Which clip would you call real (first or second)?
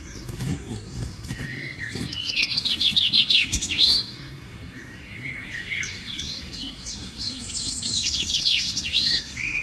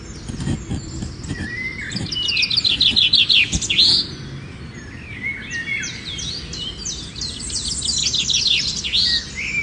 second